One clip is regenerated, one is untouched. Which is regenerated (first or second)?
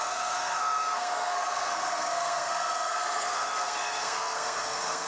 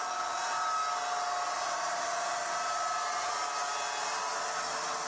first